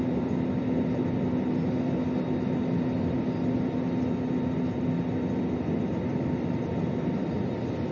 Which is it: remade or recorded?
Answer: recorded